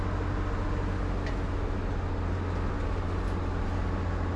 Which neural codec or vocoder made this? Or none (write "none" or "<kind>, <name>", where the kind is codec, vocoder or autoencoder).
none